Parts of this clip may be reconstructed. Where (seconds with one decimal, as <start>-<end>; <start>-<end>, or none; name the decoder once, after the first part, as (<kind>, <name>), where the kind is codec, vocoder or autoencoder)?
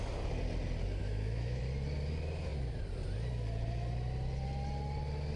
1.0-1.6 (autoencoder, DAC-VAE)